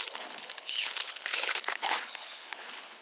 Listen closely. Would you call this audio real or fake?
fake